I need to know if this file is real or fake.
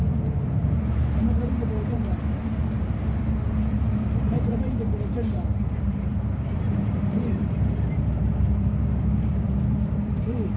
fake